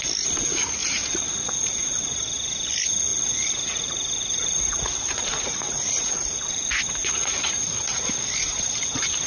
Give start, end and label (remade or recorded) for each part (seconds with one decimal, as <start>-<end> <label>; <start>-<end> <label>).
0.0-0.8 recorded; 0.8-1.9 remade; 1.9-3.1 recorded; 3.1-8.0 remade; 8.0-9.3 recorded